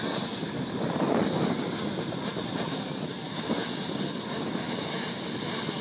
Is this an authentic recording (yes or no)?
yes